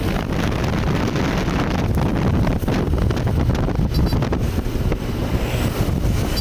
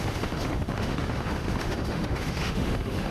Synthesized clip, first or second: second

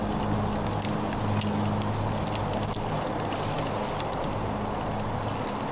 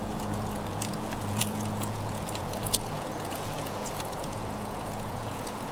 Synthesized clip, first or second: second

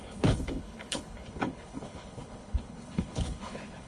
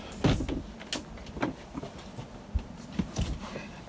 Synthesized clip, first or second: first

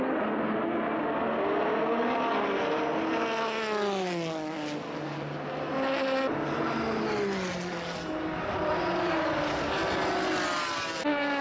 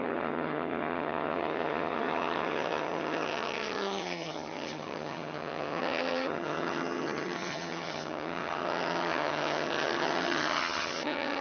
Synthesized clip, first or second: second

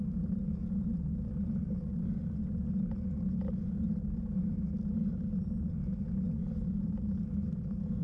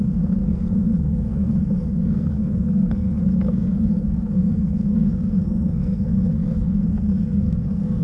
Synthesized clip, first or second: second